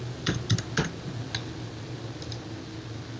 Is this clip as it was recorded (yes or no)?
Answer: yes